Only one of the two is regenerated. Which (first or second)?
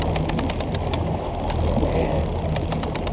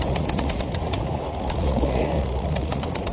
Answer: second